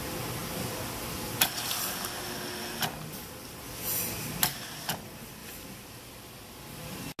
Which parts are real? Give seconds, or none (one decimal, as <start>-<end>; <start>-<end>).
0.0-5.4; 6.1-7.2